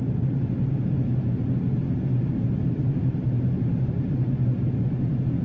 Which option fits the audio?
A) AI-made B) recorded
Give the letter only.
B